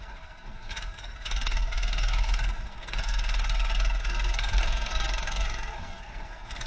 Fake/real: fake